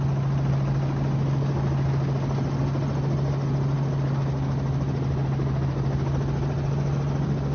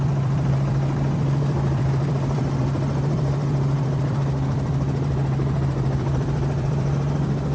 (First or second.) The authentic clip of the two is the first